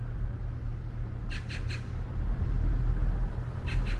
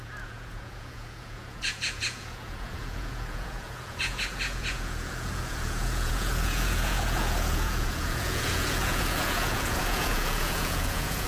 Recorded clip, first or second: first